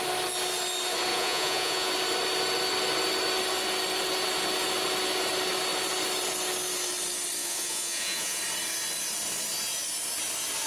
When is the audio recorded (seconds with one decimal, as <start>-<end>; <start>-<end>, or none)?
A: 0.0-1.1; 1.9-7.4; 8.4-10.7